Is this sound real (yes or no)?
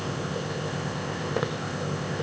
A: no